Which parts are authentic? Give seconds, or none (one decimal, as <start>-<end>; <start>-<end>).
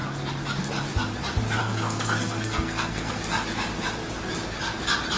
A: 0.0-1.6; 3.2-5.2